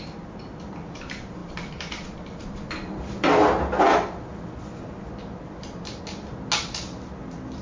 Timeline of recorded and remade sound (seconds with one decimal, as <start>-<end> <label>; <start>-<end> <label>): 0.0-7.6 recorded